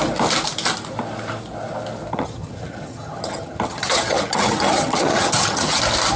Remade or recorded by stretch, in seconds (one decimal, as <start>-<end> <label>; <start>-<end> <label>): 0.0-2.1 recorded; 2.1-5.8 remade; 5.8-6.2 recorded